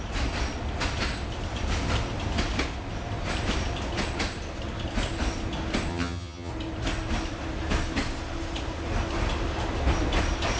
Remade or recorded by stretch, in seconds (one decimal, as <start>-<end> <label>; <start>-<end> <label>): 0.0-5.9 recorded; 5.9-6.5 remade; 6.5-10.6 recorded